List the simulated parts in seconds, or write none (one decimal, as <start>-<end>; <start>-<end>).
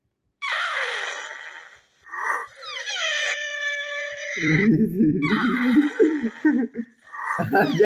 0.0-2.4; 2.9-7.8